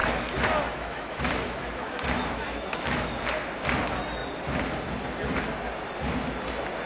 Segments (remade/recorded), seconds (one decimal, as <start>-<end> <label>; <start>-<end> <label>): 0.0-3.1 remade; 3.1-6.9 recorded